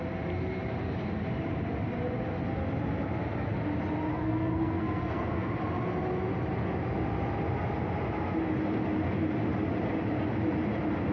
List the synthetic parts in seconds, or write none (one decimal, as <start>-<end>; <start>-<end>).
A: 4.1-5.5